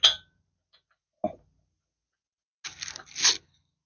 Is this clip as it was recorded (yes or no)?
yes